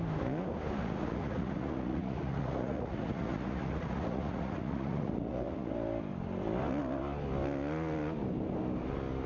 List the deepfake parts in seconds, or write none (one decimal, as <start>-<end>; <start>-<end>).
0.8-5.7